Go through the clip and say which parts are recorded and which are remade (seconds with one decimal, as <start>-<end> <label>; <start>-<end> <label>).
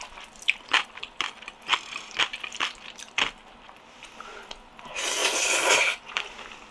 0.0-5.2 remade; 5.2-5.7 recorded; 5.7-6.7 remade